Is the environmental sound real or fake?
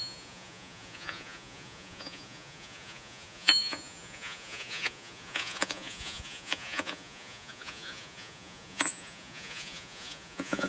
fake